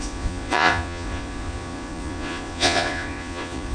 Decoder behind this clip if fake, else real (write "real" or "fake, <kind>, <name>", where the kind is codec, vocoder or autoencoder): fake, vocoder, Vocos